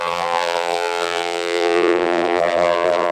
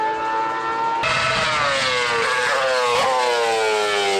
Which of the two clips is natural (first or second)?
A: second